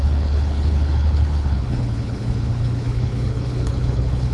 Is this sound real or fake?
fake